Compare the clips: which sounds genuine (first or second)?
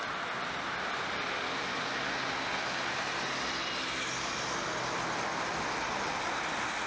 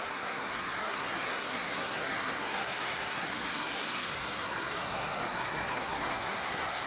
first